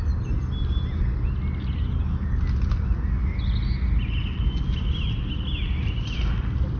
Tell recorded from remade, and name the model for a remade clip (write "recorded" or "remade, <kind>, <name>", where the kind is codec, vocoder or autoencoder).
recorded